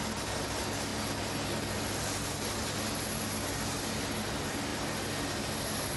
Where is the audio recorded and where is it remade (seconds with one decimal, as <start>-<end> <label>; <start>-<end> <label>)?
0.0-6.0 recorded